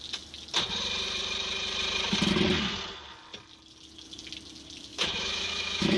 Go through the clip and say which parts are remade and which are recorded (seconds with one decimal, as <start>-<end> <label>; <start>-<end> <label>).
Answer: 0.0-4.9 recorded; 4.9-6.0 remade